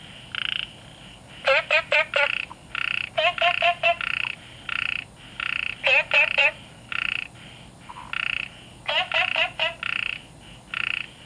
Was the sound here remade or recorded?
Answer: recorded